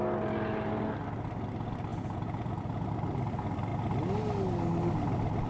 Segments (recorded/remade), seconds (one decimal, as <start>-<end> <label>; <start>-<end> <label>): 0.0-1.9 recorded; 1.9-2.9 remade; 2.9-5.5 recorded